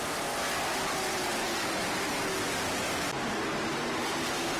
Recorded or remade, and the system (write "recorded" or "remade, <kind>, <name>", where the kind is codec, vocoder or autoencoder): recorded